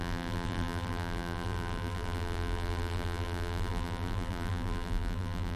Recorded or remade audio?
remade